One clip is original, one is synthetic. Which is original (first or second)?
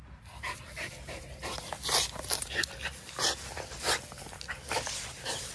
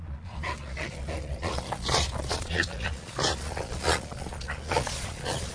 first